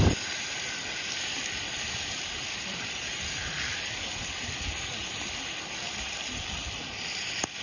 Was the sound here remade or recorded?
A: remade